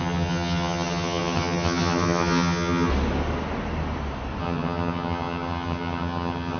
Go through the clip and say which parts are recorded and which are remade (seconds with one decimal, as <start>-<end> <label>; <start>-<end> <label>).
0.0-2.9 remade; 2.9-4.4 recorded; 4.4-6.6 remade